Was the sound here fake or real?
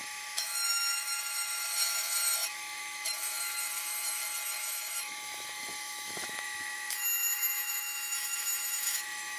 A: fake